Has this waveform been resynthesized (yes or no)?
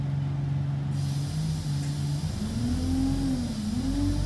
no